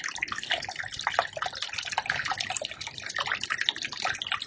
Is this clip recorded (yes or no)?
yes